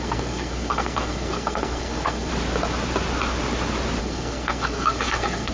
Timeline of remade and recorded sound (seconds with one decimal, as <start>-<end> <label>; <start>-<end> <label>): 0.0-2.3 remade; 2.3-4.0 recorded; 4.0-5.5 remade